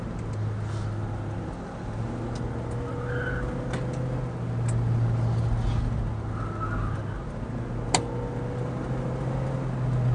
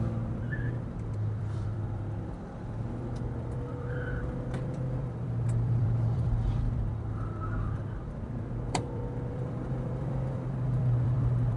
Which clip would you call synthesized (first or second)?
second